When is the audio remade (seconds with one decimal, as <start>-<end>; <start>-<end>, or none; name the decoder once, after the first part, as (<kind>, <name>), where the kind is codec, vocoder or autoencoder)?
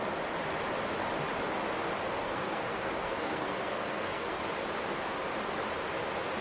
2.2-4.4 (codec, SNAC)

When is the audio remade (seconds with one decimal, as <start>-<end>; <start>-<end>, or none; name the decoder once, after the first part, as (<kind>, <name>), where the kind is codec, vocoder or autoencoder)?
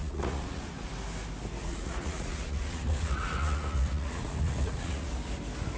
0.0-0.9 (vocoder, Vocos); 1.6-5.1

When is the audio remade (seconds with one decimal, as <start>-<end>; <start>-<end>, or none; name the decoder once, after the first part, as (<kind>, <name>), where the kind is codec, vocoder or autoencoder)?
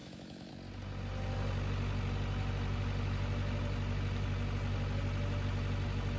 0.0-0.5 (autoencoder, DAC-VAE)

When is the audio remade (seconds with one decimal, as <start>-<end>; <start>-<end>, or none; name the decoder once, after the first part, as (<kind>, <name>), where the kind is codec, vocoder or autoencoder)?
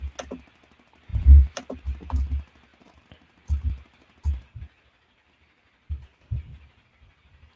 1.1-2.3 (vocoder, BigVGAN v2); 2.7-7.6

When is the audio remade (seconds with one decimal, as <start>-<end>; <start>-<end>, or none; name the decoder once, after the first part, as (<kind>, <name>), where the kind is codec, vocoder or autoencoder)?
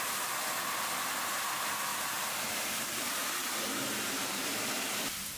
1.9-5.4 (vocoder, BigVGAN v2)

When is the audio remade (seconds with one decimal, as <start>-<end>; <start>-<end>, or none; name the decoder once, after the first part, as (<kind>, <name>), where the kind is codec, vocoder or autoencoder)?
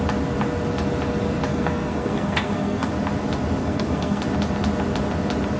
1.5-2.9 (codec, SNAC); 3.6-4.2